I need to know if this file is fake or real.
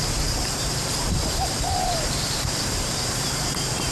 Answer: fake